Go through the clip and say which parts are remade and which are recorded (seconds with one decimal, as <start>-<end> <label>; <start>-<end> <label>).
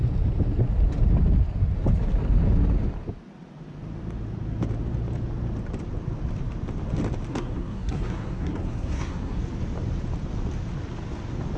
0.0-7.3 recorded; 7.3-9.4 remade; 9.4-11.6 recorded